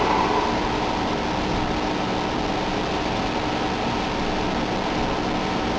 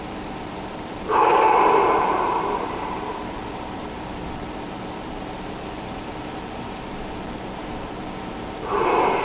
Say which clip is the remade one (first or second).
second